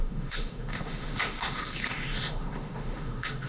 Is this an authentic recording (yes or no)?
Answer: no